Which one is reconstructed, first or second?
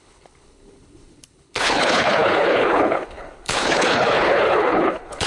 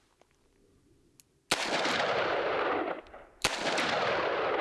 first